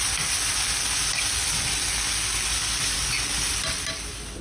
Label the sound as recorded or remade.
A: recorded